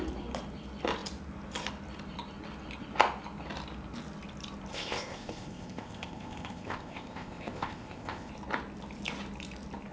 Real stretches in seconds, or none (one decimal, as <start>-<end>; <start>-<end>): 0.0-4.7; 8.3-9.9